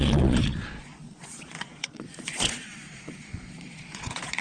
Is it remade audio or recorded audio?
remade